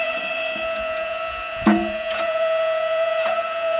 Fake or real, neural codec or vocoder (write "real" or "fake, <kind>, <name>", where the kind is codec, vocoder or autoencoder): fake, vocoder, Vocos